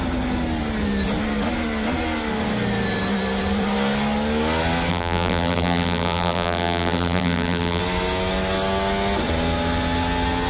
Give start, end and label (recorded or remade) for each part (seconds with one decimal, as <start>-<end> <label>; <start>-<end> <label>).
0.0-4.9 recorded; 4.9-7.8 remade; 7.8-10.5 recorded